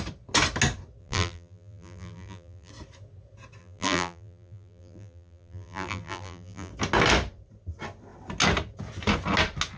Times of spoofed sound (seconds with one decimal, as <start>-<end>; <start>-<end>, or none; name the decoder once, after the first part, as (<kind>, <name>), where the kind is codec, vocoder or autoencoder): 1.0-2.7 (vocoder, BigVGAN v2); 3.6-6.7